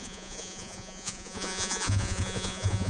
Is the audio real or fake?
fake